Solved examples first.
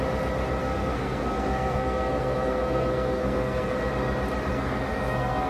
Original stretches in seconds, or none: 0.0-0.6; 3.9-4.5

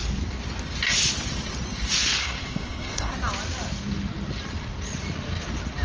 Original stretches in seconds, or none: 0.0-2.2; 3.1-5.8

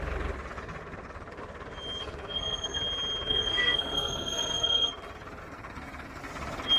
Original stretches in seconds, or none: 0.0-2.0; 2.8-3.3; 4.9-5.4; 6.2-6.8

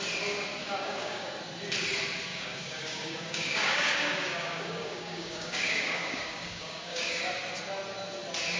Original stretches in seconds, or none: 0.0-0.6; 1.3-2.3; 7.2-8.6

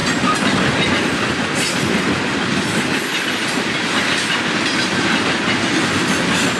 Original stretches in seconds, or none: 0.0-6.6

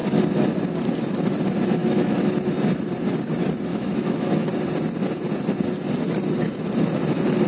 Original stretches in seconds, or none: 0.0-1.8; 2.3-3.7; 4.5-7.5

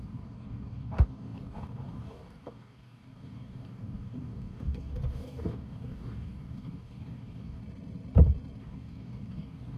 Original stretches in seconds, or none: 7.6-8.6

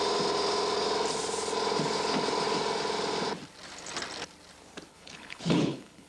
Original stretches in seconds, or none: 0.0-4.9